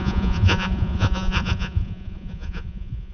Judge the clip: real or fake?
fake